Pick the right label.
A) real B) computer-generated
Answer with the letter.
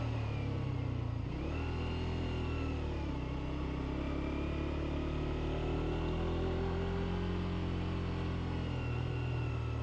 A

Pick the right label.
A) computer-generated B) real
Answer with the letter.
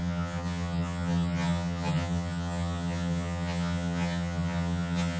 A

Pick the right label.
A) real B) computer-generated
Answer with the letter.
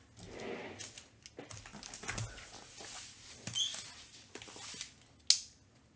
A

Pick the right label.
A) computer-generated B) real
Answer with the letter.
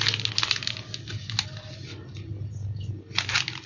B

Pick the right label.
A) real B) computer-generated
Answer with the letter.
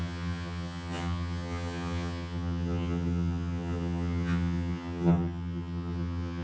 B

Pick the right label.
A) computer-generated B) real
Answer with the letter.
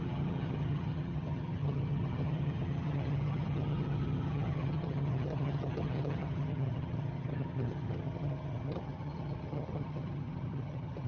A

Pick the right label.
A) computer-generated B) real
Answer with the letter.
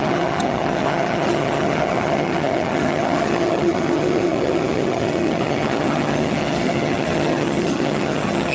A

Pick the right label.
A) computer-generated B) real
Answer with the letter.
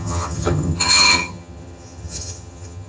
A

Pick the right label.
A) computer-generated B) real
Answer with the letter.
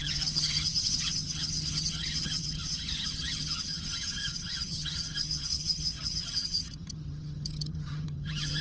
A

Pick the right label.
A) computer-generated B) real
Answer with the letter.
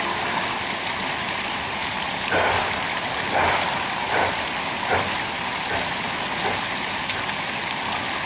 B